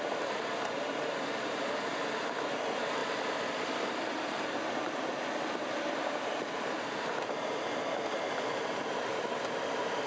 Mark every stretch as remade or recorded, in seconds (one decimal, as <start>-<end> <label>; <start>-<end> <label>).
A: 0.0-10.1 recorded